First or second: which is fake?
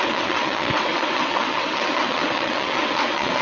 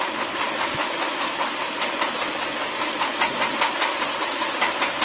first